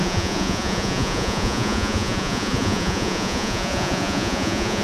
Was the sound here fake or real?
fake